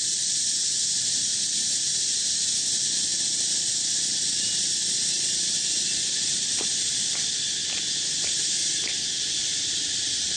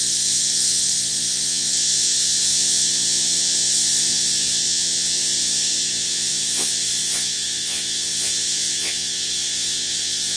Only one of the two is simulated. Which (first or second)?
second